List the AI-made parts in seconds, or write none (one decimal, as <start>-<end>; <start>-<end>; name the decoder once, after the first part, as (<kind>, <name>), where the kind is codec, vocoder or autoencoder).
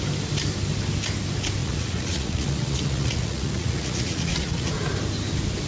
1.6-4.7 (vocoder, Vocos)